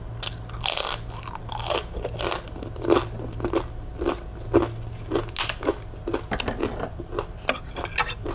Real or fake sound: real